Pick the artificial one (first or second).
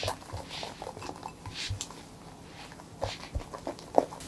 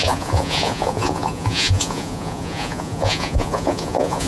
second